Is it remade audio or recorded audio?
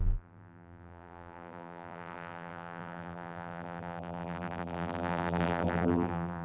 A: remade